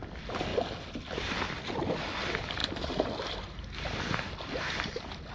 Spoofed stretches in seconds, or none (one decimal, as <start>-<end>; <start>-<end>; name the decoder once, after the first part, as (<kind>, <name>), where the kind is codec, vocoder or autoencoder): none